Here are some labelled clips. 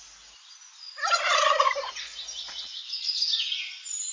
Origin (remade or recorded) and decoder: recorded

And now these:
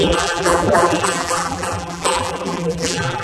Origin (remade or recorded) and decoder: remade, vocoder, BigVGAN v2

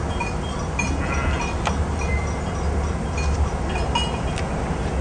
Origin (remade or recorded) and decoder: recorded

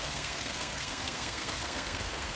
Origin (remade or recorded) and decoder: remade, codec, SNAC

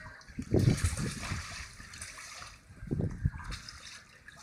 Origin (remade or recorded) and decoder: recorded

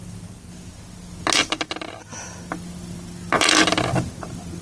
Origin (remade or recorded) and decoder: recorded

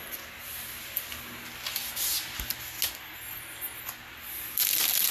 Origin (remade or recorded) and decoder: recorded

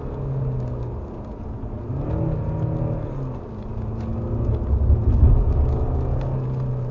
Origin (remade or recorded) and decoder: recorded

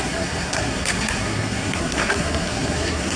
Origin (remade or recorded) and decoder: remade, codec, SNAC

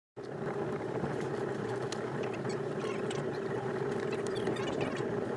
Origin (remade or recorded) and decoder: remade, vocoder, BigVGAN v2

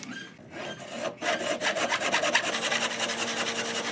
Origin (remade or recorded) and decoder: recorded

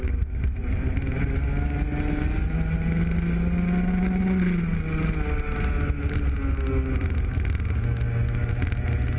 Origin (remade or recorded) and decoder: recorded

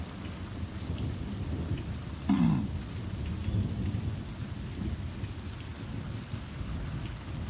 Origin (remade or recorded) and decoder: recorded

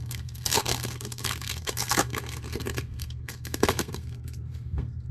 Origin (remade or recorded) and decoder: remade, codec, SNAC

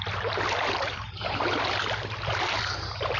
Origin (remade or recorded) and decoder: recorded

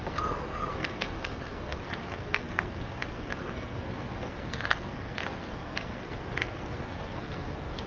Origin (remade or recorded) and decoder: remade, codec, SNAC